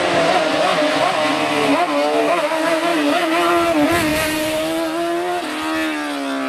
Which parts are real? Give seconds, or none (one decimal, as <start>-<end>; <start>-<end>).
0.0-2.9; 3.5-4.1; 4.6-6.5